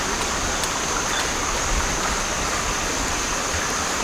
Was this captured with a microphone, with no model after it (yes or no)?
yes